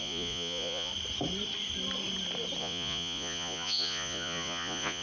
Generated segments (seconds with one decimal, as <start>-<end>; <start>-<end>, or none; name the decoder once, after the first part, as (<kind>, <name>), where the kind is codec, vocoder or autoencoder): 0.0-0.9 (vocoder, Vocos); 2.6-5.0